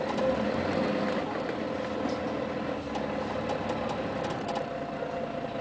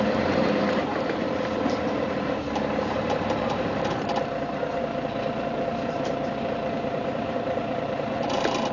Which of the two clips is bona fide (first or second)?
first